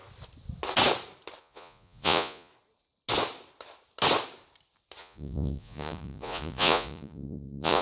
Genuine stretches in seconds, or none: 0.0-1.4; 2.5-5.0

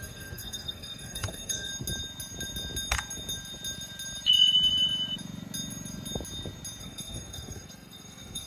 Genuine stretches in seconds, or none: 1.7-6.8

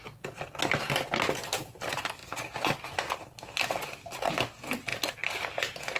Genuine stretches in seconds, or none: 0.0-6.0